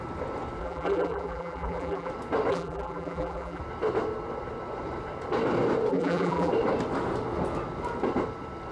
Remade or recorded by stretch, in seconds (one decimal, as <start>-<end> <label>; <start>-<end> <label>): 0.0-0.6 recorded; 0.6-2.1 remade; 2.1-2.5 recorded; 2.5-3.6 remade; 3.6-5.9 recorded; 5.9-6.5 remade; 6.5-8.7 recorded